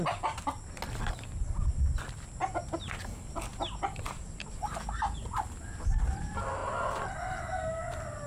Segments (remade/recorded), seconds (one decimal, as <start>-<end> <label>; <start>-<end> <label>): 0.0-3.5 recorded; 3.5-4.6 remade; 4.6-6.6 recorded; 6.6-7.4 remade; 7.4-8.3 recorded